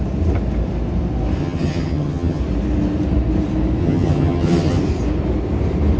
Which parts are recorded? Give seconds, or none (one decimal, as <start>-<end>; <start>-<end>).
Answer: 0.0-1.4; 2.4-3.8; 4.8-6.0